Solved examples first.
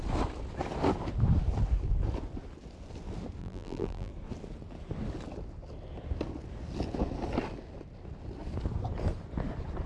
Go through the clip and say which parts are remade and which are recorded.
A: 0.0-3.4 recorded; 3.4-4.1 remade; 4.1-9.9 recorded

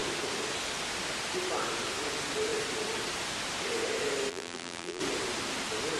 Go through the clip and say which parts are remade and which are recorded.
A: 0.0-4.3 recorded; 4.3-5.0 remade; 5.0-6.0 recorded